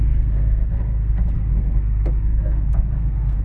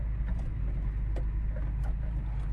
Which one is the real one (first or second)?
second